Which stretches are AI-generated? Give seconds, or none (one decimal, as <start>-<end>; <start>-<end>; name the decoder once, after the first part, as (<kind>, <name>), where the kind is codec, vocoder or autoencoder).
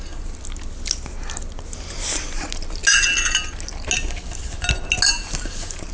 none